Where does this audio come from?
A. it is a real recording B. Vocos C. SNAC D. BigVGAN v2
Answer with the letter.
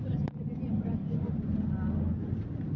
A